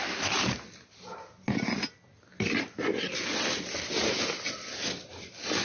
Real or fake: real